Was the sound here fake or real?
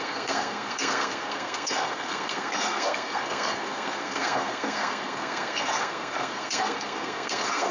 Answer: fake